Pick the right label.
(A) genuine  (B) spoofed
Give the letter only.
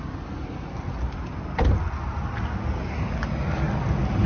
A